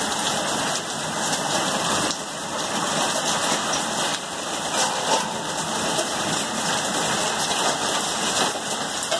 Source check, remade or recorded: recorded